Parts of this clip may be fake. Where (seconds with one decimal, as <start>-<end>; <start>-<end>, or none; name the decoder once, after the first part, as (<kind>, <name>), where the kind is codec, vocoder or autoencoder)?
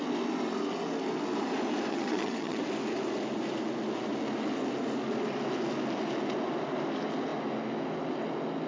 1.9-2.6 (vocoder, HiFi-GAN)